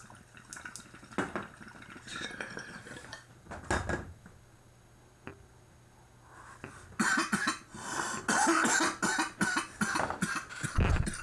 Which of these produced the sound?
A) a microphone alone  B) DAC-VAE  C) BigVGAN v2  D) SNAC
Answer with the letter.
A